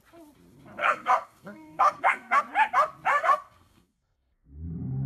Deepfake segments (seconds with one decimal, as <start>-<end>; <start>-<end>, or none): 0.8-2.4; 3.1-4.5